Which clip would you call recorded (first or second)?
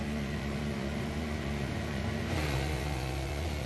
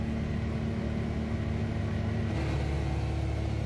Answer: second